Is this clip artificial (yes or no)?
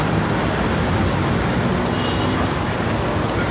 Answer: no